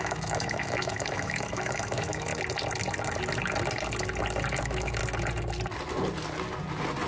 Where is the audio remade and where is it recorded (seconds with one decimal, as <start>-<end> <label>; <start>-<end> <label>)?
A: 0.0-2.3 remade; 2.3-4.6 recorded; 4.6-5.0 remade; 5.0-7.1 recorded